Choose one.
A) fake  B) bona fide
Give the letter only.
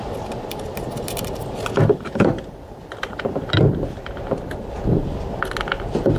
B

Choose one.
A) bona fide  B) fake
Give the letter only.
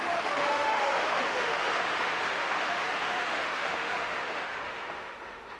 B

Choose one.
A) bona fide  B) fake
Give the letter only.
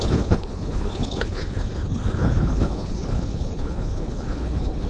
B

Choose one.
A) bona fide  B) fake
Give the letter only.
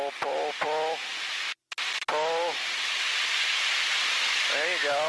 A